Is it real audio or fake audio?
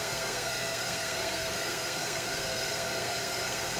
fake